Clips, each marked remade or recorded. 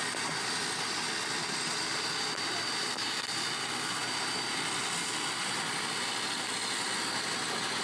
recorded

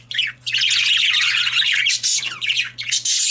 remade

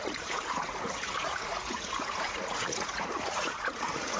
remade